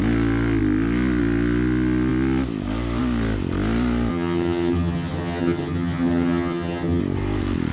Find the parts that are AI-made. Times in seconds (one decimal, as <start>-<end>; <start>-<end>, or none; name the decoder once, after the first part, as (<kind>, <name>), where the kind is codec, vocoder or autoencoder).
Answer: 4.1-7.0 (vocoder, HiFi-GAN)